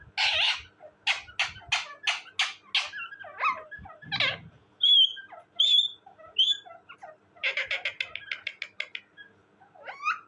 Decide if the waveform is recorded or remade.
recorded